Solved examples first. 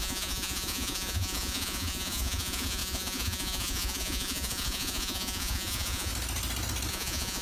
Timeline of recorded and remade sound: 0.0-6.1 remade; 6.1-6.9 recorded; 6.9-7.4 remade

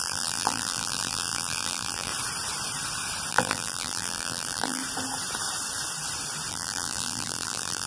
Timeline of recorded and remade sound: 0.0-2.1 remade; 2.1-3.3 recorded; 3.3-4.8 remade; 4.8-6.5 recorded; 6.5-7.9 remade